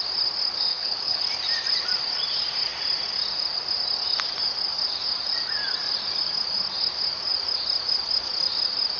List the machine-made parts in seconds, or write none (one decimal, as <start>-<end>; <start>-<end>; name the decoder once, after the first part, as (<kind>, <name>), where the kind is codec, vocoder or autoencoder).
0.7-1.2 (codec, HILCodec)